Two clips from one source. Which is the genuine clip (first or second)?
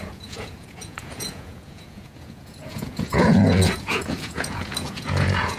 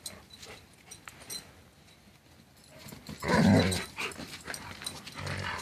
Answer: second